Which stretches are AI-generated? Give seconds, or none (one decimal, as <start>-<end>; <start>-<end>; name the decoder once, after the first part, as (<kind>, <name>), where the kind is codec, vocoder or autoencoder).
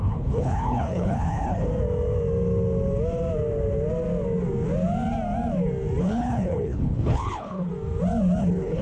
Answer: 0.0-1.7 (codec, HILCodec); 6.0-7.7; 8.4-8.8